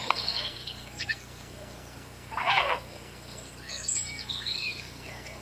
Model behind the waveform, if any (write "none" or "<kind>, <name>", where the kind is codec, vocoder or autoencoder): codec, SNAC